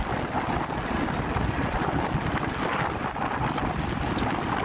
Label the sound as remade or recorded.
recorded